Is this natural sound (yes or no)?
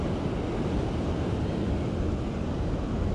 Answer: yes